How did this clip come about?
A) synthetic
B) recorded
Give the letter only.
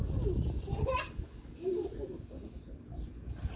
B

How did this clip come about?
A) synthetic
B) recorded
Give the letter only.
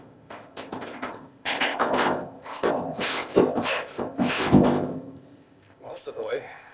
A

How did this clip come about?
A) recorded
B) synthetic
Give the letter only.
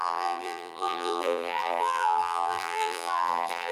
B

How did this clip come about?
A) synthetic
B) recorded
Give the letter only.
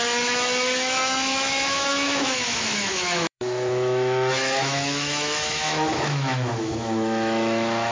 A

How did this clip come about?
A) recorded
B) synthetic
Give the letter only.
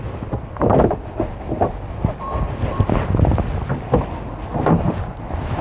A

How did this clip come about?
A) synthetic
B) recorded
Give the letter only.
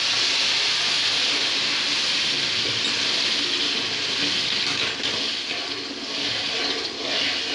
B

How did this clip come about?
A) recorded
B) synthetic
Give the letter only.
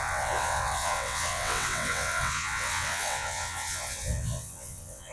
B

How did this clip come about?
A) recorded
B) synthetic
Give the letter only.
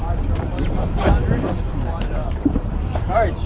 B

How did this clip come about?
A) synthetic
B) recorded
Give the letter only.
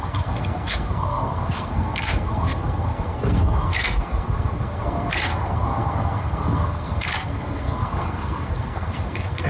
A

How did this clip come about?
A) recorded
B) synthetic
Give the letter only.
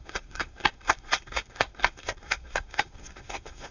B